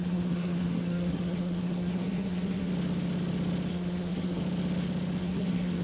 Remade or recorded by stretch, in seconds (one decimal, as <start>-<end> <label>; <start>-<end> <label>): 0.0-2.7 remade; 2.7-3.7 recorded; 3.7-4.4 remade; 4.4-5.2 recorded; 5.2-5.8 remade